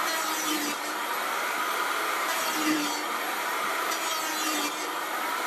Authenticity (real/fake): fake